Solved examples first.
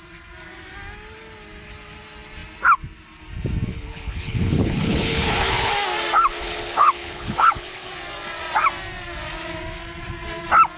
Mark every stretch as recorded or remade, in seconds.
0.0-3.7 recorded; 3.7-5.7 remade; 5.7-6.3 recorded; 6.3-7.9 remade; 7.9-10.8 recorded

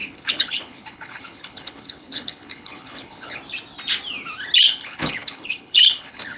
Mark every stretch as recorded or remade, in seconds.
0.0-3.4 remade; 3.4-4.6 recorded; 4.6-6.4 remade

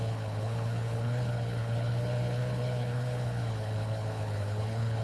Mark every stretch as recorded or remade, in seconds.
0.0-5.0 remade